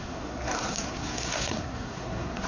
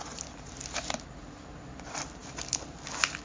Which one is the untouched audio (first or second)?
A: second